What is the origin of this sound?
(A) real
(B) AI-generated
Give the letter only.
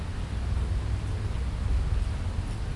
A